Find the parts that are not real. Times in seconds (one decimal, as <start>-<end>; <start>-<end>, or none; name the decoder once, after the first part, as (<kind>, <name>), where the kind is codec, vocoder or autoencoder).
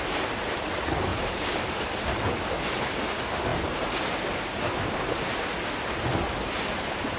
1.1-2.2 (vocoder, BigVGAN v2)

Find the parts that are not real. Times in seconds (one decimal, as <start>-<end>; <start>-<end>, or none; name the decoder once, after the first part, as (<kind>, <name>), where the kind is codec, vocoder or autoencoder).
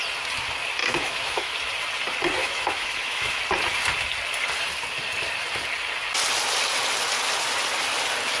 0.8-1.5 (autoencoder, DAC-VAE); 2.4-3.4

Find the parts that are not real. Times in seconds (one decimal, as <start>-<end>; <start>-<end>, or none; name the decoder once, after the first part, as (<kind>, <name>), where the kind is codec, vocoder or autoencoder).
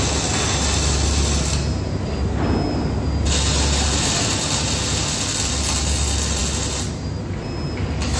none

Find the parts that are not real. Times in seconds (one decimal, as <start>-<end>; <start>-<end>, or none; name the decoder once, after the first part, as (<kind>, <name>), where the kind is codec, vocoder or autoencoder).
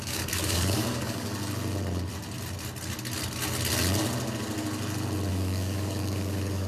0.0-1.3 (codec, DAC); 5.3-6.7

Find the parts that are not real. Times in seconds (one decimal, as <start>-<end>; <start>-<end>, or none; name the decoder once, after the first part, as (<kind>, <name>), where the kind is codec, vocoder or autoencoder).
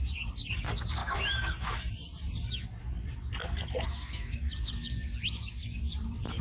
1.0-1.9 (autoencoder, DAC-VAE); 3.9-4.5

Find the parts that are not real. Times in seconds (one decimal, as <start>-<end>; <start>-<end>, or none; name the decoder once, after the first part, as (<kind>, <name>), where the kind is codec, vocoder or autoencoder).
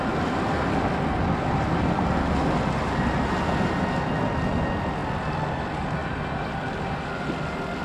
6.0-6.6 (vocoder, BigVGAN v2)